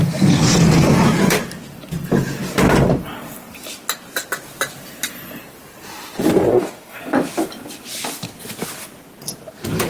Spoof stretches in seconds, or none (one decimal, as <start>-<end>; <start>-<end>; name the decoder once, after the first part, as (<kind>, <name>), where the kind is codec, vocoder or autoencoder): 6.5-7.0 (codec, DAC)